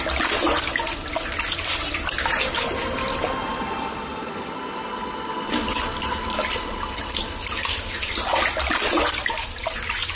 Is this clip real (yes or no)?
yes